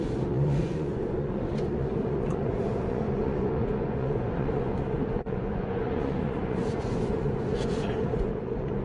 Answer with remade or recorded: remade